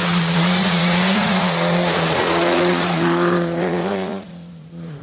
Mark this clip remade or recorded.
remade